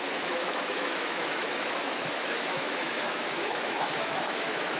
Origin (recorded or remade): remade